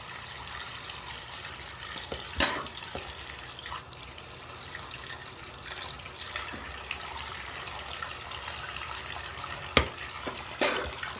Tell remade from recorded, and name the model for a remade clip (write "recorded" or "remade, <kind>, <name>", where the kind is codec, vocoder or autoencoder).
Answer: recorded